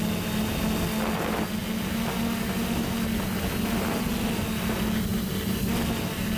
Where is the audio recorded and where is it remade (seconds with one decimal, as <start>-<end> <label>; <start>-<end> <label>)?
0.0-6.4 recorded